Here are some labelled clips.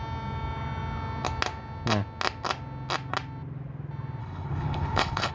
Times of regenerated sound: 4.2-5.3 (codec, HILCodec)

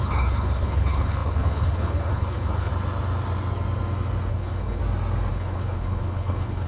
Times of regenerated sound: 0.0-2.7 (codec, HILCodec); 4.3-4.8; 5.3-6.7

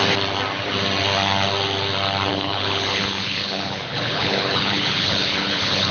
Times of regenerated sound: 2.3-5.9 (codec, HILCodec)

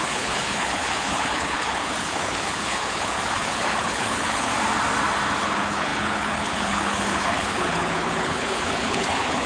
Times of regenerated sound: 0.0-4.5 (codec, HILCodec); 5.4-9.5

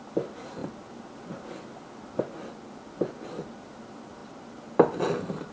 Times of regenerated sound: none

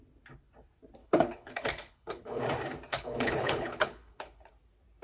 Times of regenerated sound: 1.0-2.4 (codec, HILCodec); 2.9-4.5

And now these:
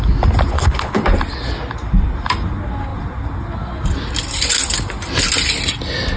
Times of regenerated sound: 0.5-1.0 (codec, HILCodec)

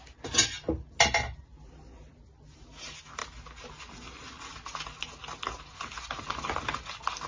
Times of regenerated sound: none